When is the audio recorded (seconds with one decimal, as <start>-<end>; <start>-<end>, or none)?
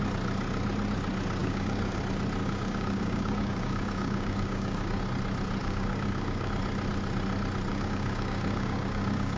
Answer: 0.0-1.4; 2.0-2.4; 5.0-5.6; 6.5-7.7